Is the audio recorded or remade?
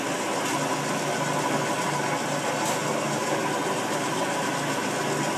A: recorded